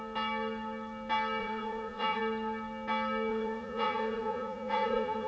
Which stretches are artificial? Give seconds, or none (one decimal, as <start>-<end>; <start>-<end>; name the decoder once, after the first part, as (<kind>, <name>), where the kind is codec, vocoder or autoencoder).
1.4-2.2 (vocoder, Vocos); 3.3-5.3